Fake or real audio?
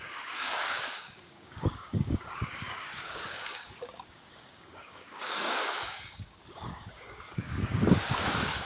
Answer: fake